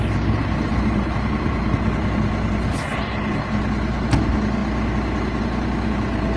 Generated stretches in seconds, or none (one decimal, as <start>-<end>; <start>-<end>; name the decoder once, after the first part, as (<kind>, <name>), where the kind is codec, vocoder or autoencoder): 0.7-2.0 (vocoder, BigVGAN v2)